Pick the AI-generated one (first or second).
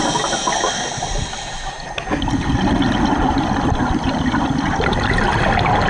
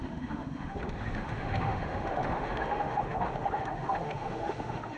second